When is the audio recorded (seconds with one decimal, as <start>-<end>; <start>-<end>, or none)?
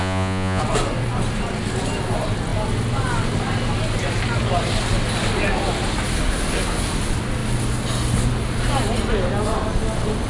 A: 0.6-10.3